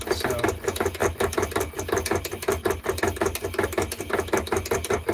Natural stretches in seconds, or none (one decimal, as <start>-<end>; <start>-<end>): 0.0-5.1